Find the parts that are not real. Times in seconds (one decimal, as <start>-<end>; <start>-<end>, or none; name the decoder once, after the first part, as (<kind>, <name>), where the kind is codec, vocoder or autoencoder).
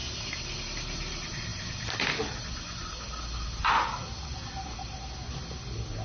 none